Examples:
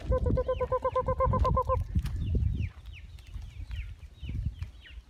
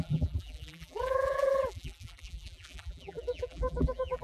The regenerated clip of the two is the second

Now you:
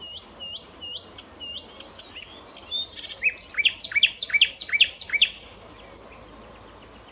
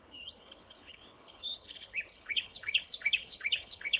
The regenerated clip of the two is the second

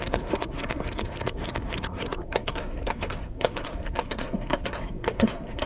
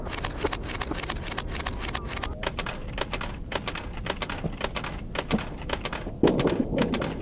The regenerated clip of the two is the first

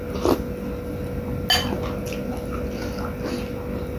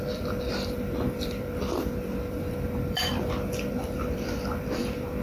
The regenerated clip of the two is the second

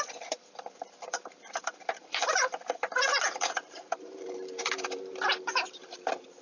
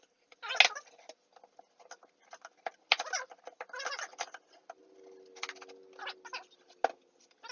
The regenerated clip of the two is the first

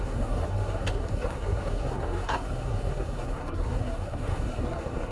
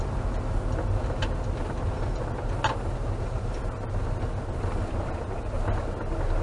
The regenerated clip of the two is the first